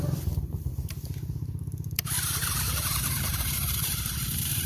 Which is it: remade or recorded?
remade